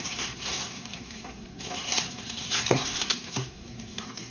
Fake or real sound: fake